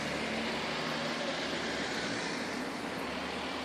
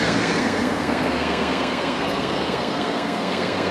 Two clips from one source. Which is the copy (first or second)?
second